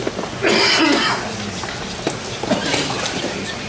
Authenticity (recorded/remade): recorded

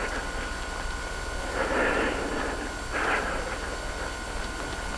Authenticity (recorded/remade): recorded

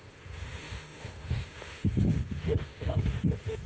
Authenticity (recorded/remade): remade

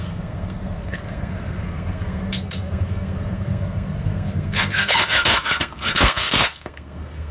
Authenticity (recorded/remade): remade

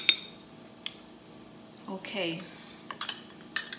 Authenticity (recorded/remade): recorded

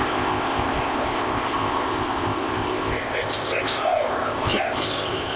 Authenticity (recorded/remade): remade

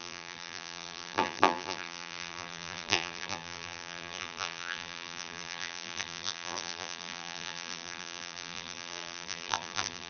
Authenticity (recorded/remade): remade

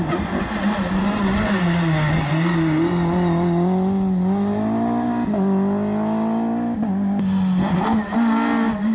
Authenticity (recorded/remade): recorded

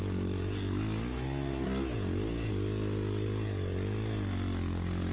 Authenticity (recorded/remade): recorded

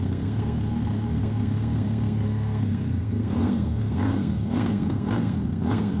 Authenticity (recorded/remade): remade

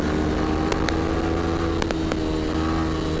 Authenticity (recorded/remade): recorded